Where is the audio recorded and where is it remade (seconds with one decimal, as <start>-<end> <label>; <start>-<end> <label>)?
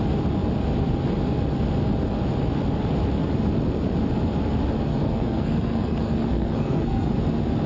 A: 0.0-4.9 recorded; 4.9-7.1 remade; 7.1-7.7 recorded